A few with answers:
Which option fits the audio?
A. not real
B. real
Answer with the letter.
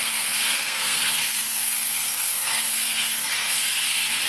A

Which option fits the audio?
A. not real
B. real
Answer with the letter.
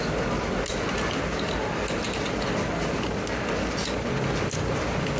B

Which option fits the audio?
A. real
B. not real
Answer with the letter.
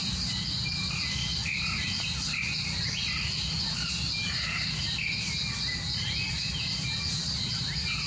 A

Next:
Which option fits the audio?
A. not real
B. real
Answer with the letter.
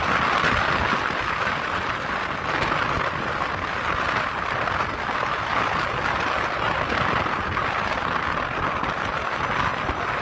B